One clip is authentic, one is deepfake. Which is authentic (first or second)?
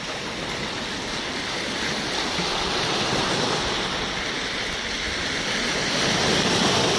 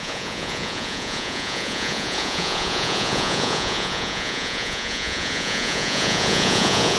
first